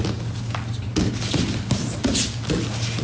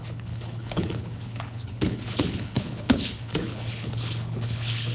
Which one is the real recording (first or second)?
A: first